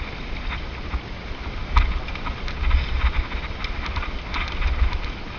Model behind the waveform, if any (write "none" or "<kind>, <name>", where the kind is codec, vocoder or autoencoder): none